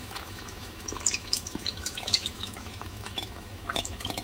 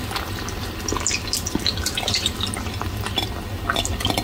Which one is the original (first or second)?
second